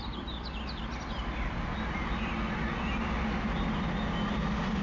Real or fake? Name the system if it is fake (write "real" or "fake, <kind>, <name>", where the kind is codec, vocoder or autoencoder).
real